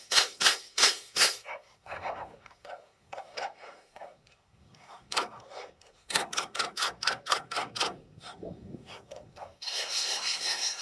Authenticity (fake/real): fake